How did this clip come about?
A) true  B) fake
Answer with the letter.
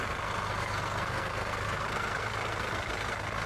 B